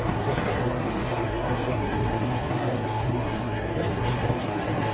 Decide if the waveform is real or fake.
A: fake